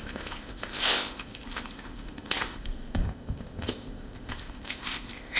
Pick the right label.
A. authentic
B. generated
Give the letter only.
B